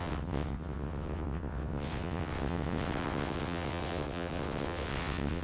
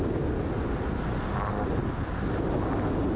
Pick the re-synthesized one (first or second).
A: first